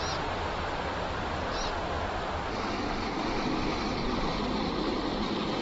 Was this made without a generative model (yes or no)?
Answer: yes